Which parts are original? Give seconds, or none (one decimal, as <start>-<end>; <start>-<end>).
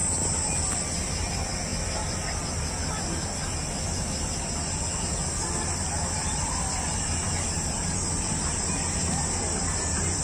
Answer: 0.0-7.2